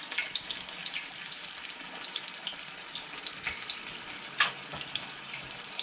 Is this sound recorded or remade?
recorded